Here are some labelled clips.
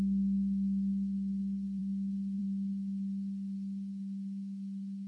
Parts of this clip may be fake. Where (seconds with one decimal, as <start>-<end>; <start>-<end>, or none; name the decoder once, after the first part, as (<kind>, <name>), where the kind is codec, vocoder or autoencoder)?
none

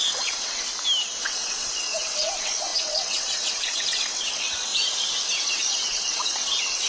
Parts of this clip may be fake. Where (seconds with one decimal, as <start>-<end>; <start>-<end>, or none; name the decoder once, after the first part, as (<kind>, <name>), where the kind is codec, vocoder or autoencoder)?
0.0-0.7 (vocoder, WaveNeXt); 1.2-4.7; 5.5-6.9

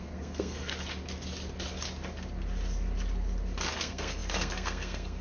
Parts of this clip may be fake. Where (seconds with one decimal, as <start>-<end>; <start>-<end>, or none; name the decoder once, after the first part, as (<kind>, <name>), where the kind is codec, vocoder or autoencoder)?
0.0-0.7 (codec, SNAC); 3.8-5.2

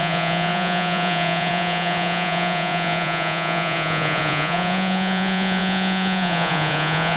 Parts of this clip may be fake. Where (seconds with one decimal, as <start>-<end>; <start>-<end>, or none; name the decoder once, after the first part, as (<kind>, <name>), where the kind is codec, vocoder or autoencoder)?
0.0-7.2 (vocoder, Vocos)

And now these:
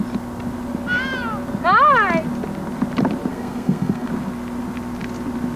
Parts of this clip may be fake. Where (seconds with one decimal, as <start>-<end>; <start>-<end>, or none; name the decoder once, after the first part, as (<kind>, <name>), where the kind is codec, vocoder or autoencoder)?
3.3-4.1 (codec, SNAC)